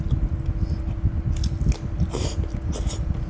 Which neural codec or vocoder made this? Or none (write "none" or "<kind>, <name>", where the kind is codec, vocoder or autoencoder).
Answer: none